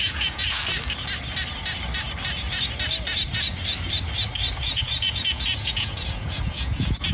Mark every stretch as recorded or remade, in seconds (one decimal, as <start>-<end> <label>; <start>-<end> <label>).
0.0-0.6 remade; 0.6-4.6 recorded; 4.6-7.1 remade